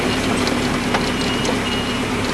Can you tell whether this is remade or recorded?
recorded